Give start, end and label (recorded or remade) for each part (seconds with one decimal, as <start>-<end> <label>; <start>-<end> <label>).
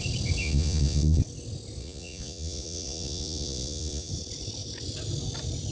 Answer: 0.0-0.4 recorded; 0.4-1.2 remade; 1.2-1.8 recorded; 1.8-4.1 remade; 4.1-5.7 recorded